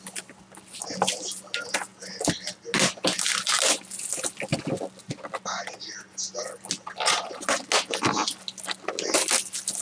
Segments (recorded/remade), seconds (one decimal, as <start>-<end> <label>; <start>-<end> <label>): 0.0-9.8 recorded